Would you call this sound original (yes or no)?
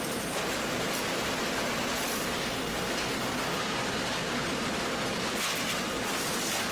yes